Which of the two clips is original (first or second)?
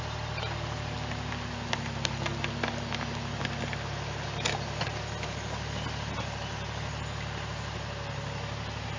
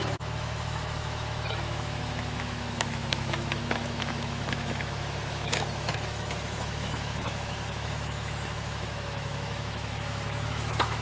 first